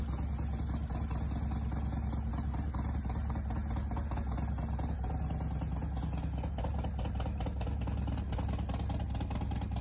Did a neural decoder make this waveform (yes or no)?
no